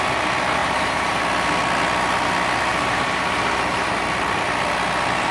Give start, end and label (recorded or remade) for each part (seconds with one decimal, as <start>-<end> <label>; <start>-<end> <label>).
0.0-0.6 recorded; 0.6-1.2 remade; 1.2-2.7 recorded; 2.7-4.0 remade; 4.0-5.3 recorded